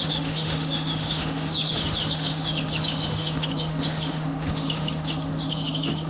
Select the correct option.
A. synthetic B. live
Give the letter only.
A